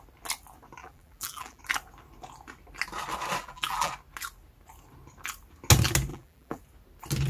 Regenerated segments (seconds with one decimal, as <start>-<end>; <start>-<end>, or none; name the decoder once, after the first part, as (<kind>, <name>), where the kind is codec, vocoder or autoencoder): 0.8-1.6 (vocoder, BigVGAN v2); 3.4-3.9; 6.1-6.6